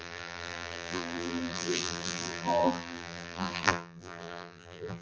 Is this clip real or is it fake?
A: fake